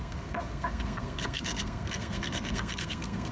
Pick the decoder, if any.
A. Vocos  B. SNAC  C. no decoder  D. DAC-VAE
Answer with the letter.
B